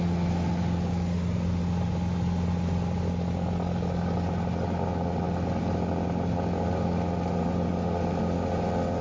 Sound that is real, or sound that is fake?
real